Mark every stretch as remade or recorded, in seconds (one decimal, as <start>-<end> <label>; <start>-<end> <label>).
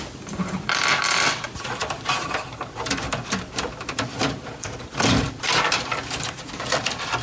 0.0-7.2 remade